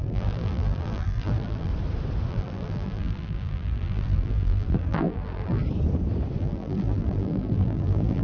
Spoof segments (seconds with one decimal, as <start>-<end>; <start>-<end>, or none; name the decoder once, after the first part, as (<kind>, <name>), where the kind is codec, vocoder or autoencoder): 0.0-1.7 (vocoder, BigVGAN v2); 2.3-5.6; 6.4-8.2